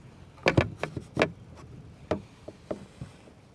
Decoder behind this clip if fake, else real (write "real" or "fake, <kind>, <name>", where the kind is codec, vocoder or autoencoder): real